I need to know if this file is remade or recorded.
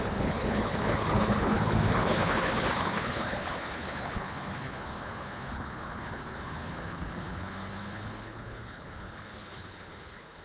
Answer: remade